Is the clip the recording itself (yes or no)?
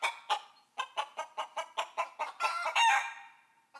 yes